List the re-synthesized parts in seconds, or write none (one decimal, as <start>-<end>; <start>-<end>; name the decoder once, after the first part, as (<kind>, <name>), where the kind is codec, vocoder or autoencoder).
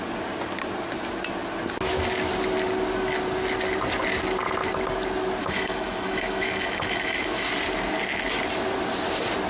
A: 5.4-7.5 (autoencoder, DAC-VAE)